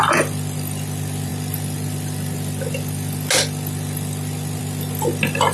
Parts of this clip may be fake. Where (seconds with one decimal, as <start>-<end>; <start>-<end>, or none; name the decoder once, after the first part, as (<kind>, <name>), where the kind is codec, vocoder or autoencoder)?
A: none